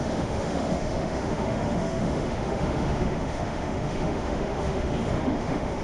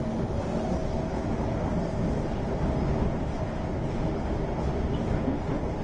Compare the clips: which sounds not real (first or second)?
first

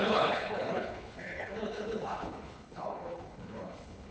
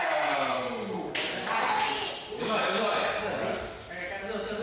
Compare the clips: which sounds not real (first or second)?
first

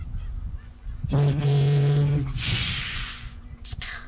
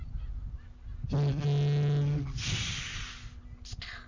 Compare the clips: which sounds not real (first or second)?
first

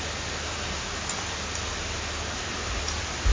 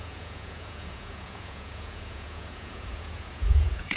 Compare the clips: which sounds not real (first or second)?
second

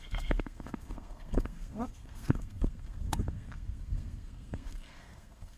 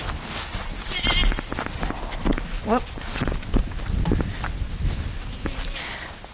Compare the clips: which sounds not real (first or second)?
first